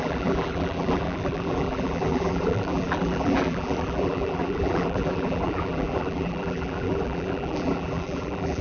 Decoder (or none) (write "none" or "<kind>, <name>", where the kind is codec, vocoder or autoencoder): vocoder, BigVGAN v2